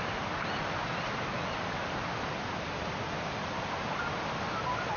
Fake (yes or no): no